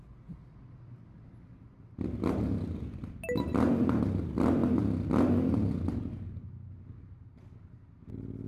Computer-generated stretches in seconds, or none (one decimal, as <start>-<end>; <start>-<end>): none